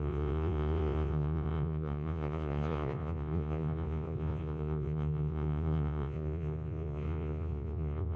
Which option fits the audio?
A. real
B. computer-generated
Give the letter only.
B